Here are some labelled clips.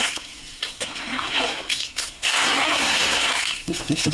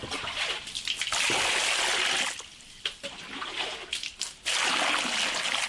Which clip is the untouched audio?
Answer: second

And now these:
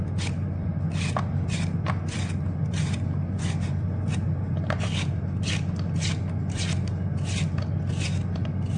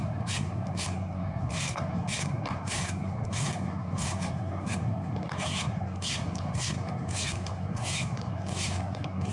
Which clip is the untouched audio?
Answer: first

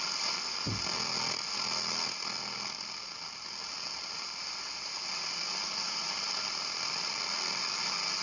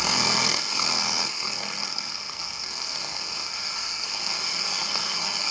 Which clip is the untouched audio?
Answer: first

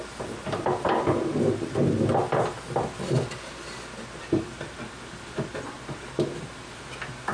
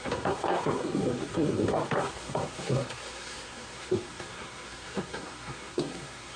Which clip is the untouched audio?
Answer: first